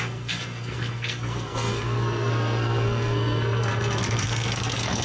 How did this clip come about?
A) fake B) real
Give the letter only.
A